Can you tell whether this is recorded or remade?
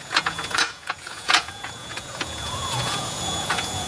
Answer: remade